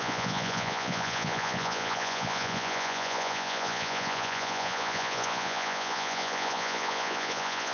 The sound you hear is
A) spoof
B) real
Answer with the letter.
A